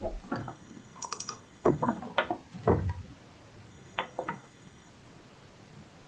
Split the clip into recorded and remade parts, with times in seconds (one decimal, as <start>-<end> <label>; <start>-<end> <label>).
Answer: 0.0-0.4 recorded; 0.4-2.0 remade; 2.0-3.7 recorded; 3.7-4.9 remade; 4.9-6.1 recorded